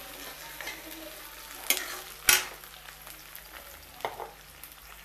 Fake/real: real